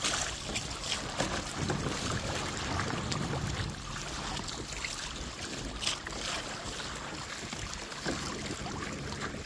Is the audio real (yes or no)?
yes